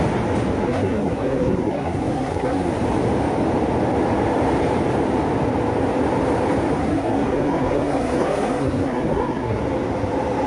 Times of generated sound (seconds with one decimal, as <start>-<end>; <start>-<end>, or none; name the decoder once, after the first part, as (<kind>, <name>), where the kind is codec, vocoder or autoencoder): 0.6-2.7 (codec, SNAC); 6.8-9.6